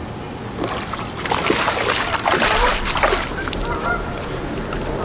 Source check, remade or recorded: recorded